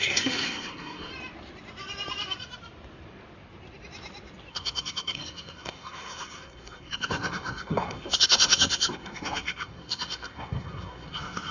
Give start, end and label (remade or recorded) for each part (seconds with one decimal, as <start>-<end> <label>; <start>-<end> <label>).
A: 0.0-1.1 remade; 1.1-4.5 recorded; 4.5-11.5 remade